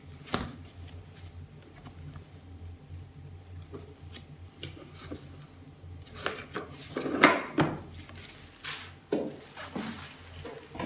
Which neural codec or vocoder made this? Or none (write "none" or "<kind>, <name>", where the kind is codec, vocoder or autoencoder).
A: none